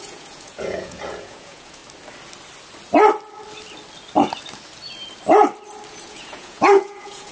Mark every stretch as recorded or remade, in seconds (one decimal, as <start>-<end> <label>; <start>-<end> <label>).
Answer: 0.0-1.8 remade; 1.8-5.9 recorded; 5.9-7.3 remade

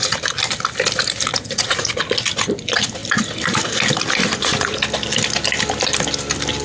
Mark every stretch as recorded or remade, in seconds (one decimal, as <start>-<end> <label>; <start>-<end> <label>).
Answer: 0.0-1.3 recorded; 1.3-1.9 remade; 1.9-4.2 recorded; 4.2-4.8 remade; 4.8-6.6 recorded